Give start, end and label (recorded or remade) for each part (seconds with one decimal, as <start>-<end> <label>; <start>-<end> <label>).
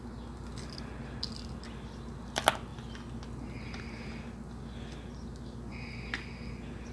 0.0-6.9 recorded